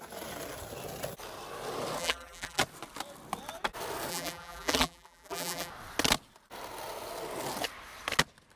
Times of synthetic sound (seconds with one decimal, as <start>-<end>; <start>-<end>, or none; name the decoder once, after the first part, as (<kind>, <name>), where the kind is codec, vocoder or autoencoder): 2.0-2.6 (vocoder, BigVGAN v2); 4.1-5.7